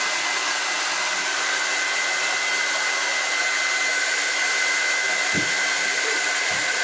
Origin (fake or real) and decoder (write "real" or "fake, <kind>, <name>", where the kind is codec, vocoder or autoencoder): real